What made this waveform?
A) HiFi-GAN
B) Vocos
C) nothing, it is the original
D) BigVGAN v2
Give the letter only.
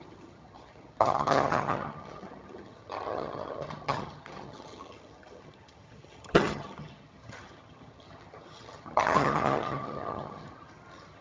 A